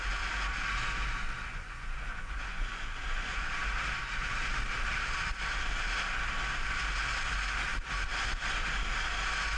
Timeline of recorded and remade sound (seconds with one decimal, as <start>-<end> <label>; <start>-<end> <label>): 0.0-1.5 recorded; 1.5-3.5 remade; 3.5-9.6 recorded